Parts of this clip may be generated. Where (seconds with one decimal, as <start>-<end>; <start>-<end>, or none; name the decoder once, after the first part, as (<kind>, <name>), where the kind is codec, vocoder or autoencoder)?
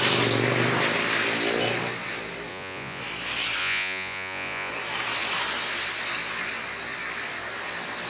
2.5-3.0 (vocoder, Vocos); 3.6-4.7